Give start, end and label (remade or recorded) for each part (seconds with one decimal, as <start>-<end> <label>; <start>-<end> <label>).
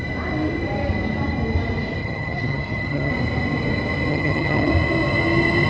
0.0-2.0 recorded; 2.0-3.1 remade; 3.1-4.1 recorded; 4.1-4.7 remade; 4.7-5.7 recorded